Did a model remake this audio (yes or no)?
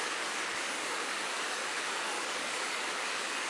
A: yes